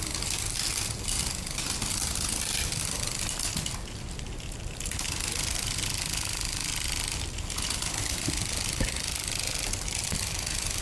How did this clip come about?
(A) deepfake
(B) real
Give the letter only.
B